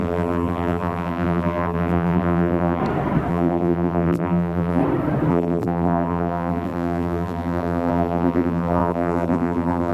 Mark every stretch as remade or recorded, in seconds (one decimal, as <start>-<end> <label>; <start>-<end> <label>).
0.0-2.8 remade; 2.8-3.3 recorded; 3.3-4.8 remade; 4.8-5.3 recorded; 5.3-9.9 remade